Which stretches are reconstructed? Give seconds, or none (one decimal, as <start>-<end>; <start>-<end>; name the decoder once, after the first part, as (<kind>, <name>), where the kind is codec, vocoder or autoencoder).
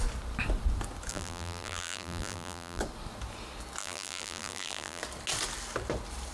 1.1-2.8 (vocoder, BigVGAN v2); 3.8-5.0